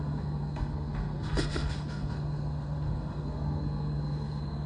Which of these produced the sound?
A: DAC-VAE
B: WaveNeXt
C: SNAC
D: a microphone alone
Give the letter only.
C